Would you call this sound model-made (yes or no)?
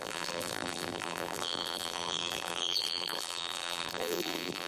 yes